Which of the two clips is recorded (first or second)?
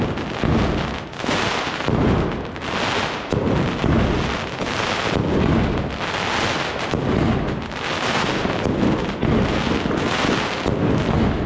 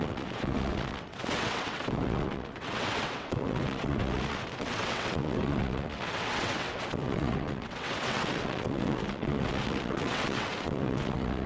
first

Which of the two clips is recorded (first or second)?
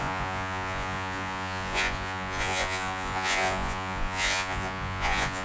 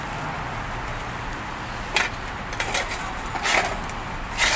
second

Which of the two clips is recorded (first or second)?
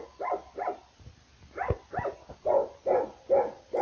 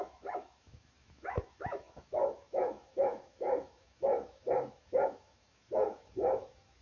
first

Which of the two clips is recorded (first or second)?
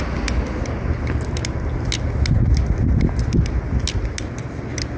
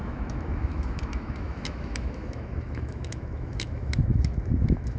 first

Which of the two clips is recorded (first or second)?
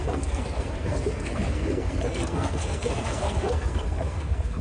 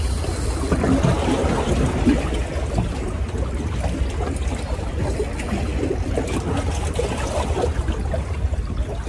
second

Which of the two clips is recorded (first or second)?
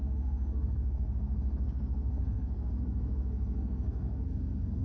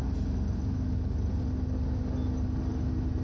second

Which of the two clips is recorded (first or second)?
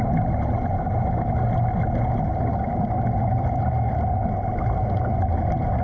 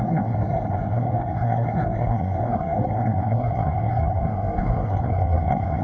first